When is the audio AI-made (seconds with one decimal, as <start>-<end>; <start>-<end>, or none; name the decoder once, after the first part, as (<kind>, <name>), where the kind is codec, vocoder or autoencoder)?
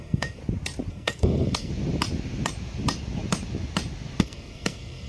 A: 0.0-0.4 (codec, SNAC); 0.9-1.7; 4.2-5.1